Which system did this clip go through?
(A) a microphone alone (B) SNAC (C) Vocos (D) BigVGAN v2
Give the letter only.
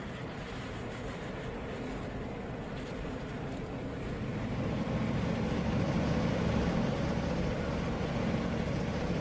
A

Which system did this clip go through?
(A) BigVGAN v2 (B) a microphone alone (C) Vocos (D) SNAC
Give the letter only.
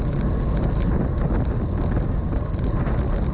B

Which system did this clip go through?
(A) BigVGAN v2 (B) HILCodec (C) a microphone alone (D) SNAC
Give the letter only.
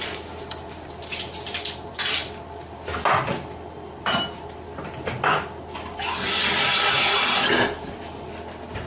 C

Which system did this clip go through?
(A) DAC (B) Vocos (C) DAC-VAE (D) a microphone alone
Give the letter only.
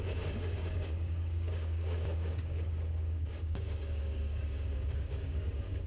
A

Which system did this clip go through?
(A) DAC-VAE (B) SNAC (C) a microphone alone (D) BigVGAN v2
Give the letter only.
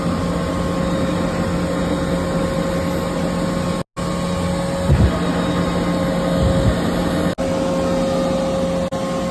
C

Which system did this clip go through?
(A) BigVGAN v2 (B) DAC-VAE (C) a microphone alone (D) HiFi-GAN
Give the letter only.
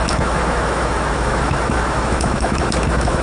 B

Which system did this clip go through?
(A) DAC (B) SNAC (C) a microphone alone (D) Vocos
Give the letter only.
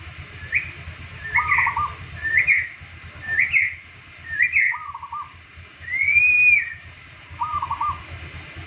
C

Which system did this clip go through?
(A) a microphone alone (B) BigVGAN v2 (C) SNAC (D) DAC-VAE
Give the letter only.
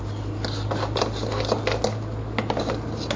A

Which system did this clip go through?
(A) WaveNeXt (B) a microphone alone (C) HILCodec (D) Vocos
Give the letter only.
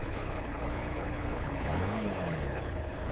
C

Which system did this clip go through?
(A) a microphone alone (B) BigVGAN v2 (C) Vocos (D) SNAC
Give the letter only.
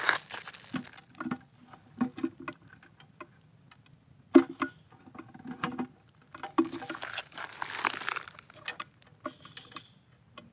A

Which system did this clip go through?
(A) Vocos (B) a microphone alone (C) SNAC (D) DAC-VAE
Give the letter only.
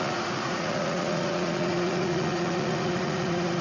A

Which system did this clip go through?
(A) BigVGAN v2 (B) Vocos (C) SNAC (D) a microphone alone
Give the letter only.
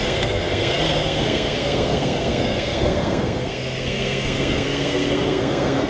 C